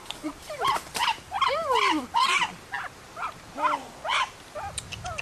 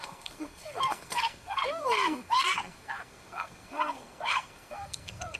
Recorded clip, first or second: first